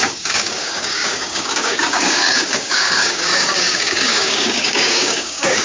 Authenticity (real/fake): fake